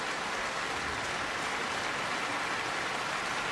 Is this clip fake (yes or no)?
yes